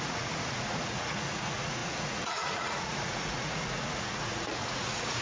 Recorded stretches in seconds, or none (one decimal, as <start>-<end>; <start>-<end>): none